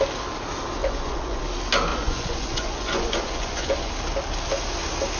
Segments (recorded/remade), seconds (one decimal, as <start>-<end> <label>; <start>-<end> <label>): 0.0-0.8 recorded; 0.8-1.4 remade; 1.4-1.9 recorded; 1.9-3.9 remade; 3.9-5.2 recorded